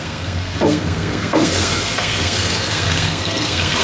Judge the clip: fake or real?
fake